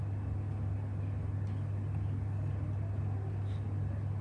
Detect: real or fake real